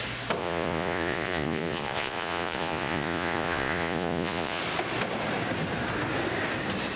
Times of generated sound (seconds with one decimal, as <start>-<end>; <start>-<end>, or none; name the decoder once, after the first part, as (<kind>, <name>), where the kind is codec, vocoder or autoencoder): 0.4-4.6 (vocoder, Vocos)